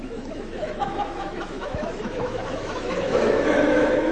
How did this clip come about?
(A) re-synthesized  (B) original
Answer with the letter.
A